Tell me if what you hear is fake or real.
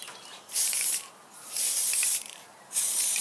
fake